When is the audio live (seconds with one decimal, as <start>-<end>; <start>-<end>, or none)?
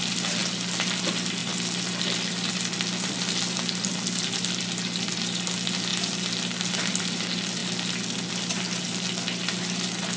0.0-10.2